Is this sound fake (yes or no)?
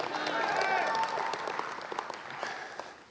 no